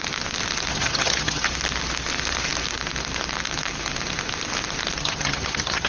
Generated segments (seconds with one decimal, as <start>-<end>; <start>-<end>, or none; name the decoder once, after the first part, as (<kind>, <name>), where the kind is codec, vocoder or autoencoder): 0.7-1.5 (vocoder, HiFi-GAN); 5.0-5.9